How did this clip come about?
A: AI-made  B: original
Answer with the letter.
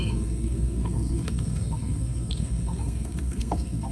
A